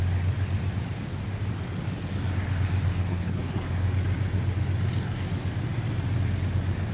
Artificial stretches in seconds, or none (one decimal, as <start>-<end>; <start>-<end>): 3.1-3.7

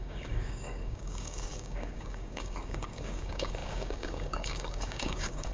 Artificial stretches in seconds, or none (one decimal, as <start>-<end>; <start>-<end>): 0.0-5.5

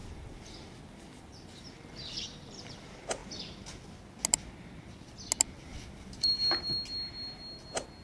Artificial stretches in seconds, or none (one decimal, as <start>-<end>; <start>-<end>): 0.0-1.2; 5.7-6.4